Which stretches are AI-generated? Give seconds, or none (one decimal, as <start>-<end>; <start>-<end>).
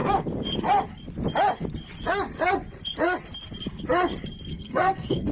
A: 4.5-5.3